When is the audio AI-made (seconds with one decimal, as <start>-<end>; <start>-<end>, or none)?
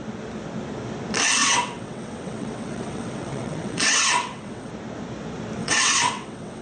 1.4-4.7; 5.6-6.6